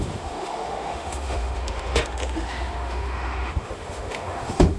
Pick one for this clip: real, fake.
fake